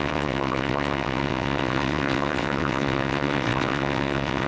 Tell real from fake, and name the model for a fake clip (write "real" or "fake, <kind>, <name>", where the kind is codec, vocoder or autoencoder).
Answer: fake, vocoder, WaveNeXt